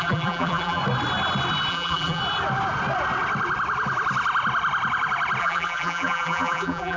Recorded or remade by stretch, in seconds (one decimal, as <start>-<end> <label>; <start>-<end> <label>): 0.0-0.8 remade; 0.8-1.7 recorded; 1.7-2.2 remade; 2.2-5.4 recorded; 5.4-7.0 remade